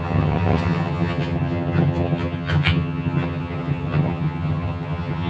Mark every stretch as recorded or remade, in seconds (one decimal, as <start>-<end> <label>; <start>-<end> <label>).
0.0-5.3 remade